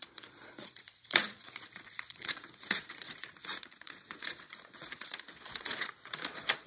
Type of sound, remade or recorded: remade